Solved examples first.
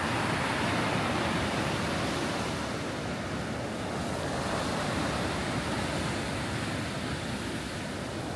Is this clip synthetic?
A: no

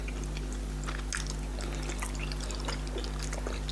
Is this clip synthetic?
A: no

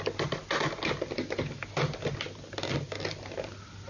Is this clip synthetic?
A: no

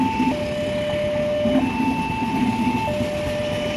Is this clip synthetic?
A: no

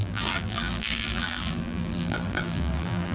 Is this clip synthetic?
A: yes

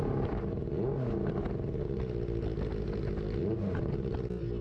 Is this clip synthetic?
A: no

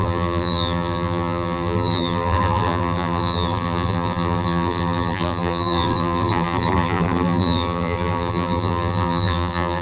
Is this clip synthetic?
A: yes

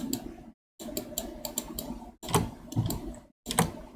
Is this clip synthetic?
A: no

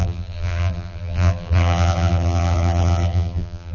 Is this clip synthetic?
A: yes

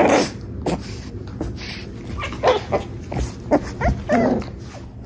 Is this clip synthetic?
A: no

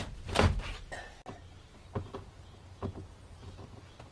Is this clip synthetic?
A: no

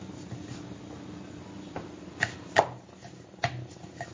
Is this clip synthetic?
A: no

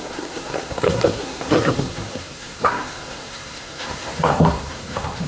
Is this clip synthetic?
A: yes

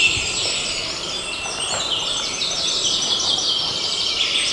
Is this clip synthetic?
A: no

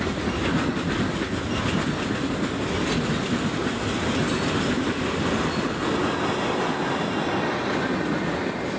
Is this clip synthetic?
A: no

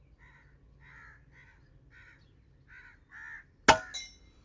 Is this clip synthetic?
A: no